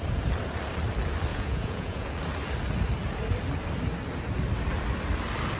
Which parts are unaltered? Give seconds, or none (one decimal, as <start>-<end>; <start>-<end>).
0.0-1.3; 2.1-5.6